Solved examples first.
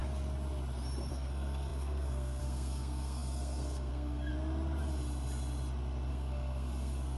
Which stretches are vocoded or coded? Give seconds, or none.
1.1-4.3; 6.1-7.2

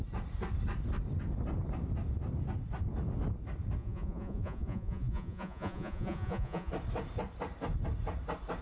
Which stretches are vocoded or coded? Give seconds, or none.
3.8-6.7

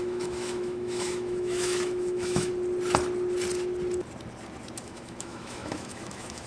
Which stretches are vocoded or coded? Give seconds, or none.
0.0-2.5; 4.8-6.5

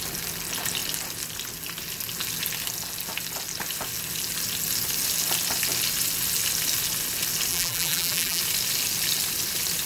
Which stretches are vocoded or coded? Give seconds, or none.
7.5-8.4